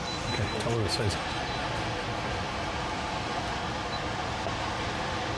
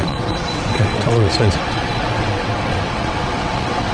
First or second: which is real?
first